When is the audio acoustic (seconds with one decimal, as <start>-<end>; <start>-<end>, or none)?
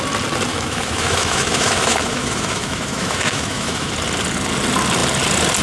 0.0-0.5; 3.9-5.6